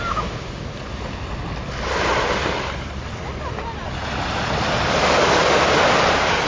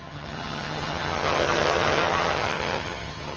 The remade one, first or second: second